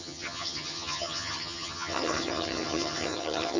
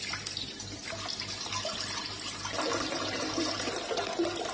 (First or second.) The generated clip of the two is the first